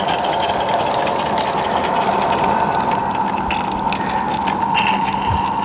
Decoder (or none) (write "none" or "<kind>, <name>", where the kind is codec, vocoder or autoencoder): none